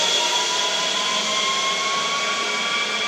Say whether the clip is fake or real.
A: real